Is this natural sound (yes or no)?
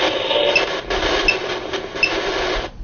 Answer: yes